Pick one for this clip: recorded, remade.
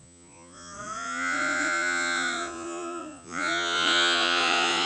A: remade